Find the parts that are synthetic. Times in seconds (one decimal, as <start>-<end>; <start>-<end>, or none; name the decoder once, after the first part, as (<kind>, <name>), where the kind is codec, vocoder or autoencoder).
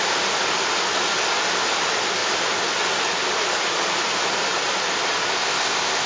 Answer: 5.3-6.1 (codec, ZipCodec)